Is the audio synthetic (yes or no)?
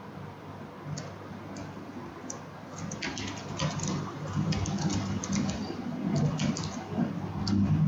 no